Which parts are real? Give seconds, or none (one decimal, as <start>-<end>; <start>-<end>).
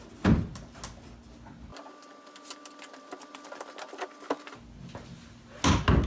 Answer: 0.0-6.1